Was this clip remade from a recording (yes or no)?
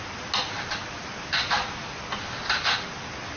no